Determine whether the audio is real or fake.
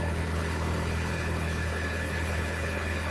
fake